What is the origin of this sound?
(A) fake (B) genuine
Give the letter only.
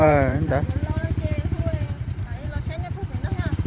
A